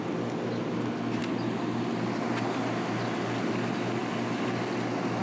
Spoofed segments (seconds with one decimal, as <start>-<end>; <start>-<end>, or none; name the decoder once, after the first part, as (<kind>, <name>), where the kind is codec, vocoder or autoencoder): none